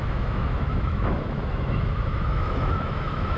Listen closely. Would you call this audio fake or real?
fake